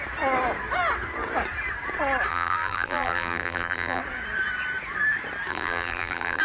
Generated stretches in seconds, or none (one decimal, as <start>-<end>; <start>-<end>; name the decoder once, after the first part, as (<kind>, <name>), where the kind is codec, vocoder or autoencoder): 2.3-4.0 (vocoder, BigVGAN v2); 5.5-6.4

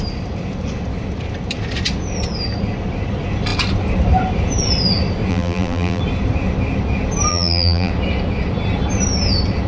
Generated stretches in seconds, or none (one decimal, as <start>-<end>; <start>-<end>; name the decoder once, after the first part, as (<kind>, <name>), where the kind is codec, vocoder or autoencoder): 5.3-6.0 (vocoder, BigVGAN v2); 7.3-7.9

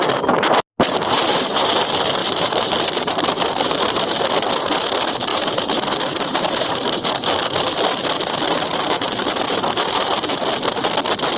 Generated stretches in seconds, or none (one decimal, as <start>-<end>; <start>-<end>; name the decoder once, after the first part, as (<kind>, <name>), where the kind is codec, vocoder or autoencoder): 2.2-4.3 (vocoder, BigVGAN v2); 5.3-7.1; 8.7-10.4

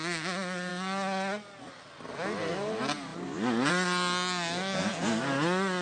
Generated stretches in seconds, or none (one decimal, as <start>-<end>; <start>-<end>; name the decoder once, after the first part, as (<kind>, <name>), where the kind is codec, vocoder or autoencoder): none

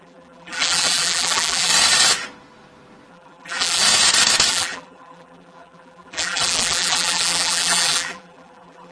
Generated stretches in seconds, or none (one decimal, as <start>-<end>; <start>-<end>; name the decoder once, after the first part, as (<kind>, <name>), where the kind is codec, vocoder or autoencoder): 0.0-1.7 (vocoder, BigVGAN v2); 3.1-3.8; 4.5-8.9

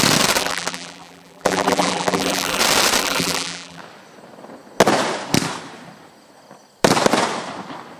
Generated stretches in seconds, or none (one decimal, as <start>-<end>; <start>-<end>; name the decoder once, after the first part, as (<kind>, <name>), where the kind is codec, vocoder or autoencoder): 0.4-2.6 (vocoder, BigVGAN v2); 3.0-3.8

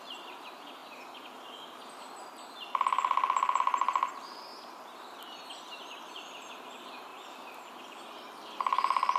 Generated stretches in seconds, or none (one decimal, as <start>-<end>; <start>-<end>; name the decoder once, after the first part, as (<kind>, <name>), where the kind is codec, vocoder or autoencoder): 0.0-0.8 (vocoder, BigVGAN v2); 3.6-9.2

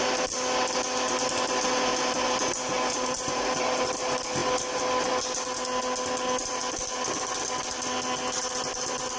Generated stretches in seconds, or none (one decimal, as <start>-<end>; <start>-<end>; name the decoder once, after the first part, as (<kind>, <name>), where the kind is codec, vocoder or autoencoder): 1.9-3.8 (vocoder, BigVGAN v2)